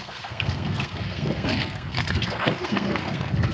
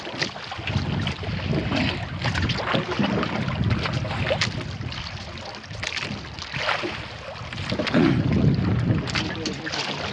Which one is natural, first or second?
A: second